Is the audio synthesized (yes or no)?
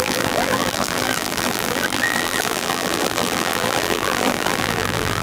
yes